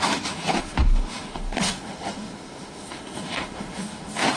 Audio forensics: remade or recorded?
remade